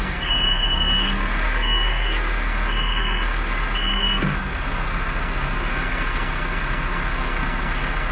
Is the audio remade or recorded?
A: remade